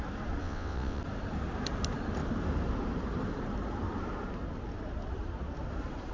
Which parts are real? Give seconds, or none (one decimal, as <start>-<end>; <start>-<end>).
0.0-0.4; 1.0-6.1